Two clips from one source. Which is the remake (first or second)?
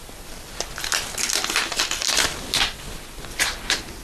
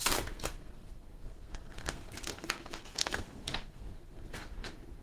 second